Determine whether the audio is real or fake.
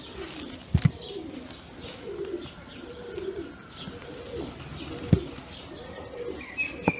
real